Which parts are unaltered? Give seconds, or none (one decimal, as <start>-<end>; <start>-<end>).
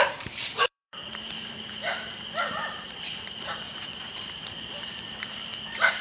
none